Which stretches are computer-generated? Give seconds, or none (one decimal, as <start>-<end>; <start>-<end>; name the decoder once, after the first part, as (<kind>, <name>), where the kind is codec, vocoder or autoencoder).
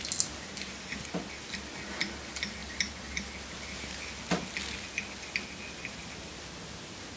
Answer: none